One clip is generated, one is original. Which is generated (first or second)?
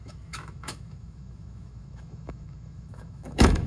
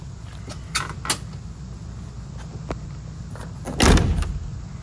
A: first